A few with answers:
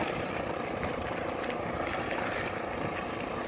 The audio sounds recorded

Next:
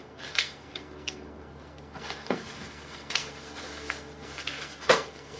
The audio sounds remade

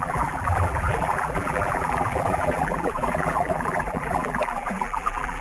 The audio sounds remade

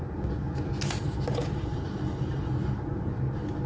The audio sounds recorded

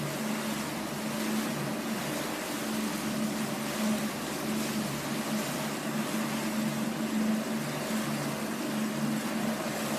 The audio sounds recorded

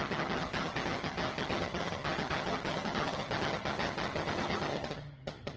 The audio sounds remade